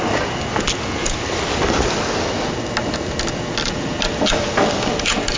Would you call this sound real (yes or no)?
yes